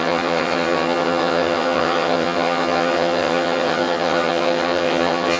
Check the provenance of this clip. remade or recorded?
remade